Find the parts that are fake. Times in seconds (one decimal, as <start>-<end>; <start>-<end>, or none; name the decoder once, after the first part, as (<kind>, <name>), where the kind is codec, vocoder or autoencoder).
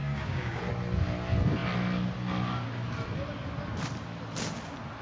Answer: 0.0-0.6 (codec, DAC)